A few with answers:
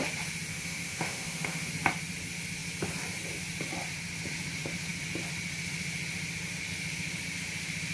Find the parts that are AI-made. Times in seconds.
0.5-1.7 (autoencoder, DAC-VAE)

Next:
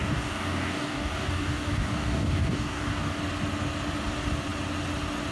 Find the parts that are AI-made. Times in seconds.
0.0-3.2 (codec, DAC)

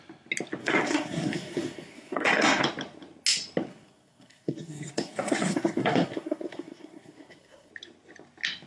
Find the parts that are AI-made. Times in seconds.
0.6-2.6 (codec, SNAC); 3.7-7.7

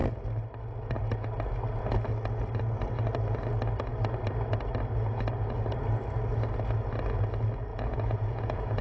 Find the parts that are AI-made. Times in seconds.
7.7-8.8 (vocoder, Vocos)

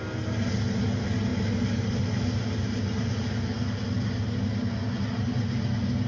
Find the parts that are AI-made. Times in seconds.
none

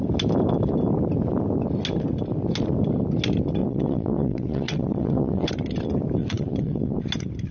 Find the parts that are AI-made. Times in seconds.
3.6-5.5 (vocoder, WaveNeXt); 6.2-7.0

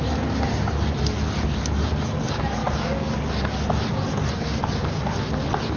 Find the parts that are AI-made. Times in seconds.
none

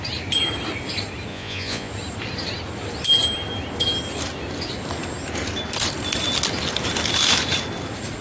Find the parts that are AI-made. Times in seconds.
1.3-1.9 (vocoder, Vocos)